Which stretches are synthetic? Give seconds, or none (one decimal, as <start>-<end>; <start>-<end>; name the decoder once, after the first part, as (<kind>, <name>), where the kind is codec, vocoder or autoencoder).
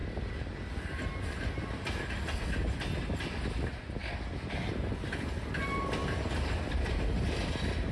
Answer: 6.0-6.5 (vocoder, BigVGAN v2)